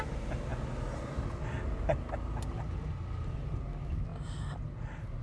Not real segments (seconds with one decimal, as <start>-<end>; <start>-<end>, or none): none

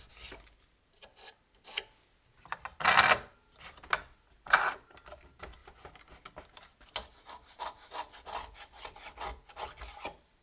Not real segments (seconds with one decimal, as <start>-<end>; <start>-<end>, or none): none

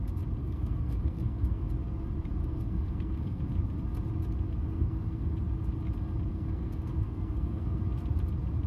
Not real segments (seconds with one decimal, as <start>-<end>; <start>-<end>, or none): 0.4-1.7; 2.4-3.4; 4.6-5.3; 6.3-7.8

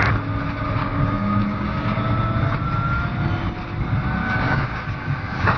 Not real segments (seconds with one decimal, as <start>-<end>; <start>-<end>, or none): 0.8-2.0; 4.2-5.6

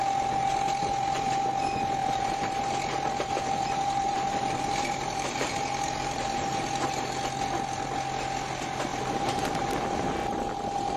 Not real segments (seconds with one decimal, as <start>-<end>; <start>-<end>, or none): 0.8-1.5; 2.0-7.2; 8.9-9.5